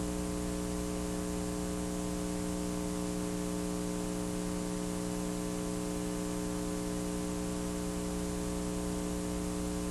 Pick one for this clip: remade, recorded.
recorded